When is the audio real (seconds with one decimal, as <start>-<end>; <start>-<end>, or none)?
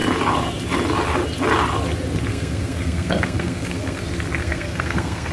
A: 0.0-2.3; 4.0-4.4